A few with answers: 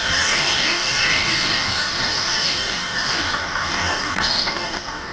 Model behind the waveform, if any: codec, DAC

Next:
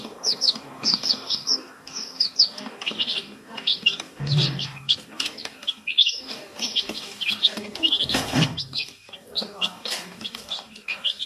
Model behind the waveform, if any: codec, DAC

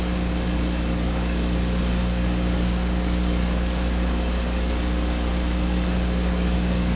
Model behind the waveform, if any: codec, DAC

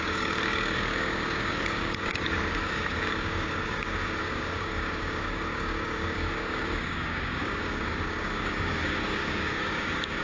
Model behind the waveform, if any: codec, DAC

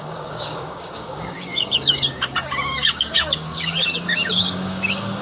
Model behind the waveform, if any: codec, DAC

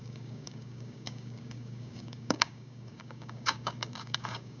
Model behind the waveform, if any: codec, DAC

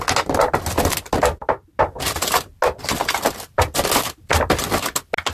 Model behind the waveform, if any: none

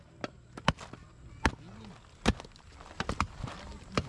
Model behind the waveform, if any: none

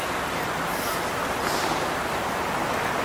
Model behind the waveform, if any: none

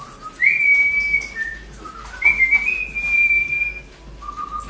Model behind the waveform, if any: none